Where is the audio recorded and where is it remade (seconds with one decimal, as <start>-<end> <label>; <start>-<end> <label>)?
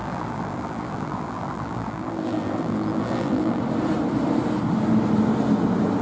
0.0-3.6 remade; 3.6-6.0 recorded